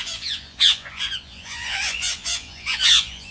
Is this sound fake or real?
fake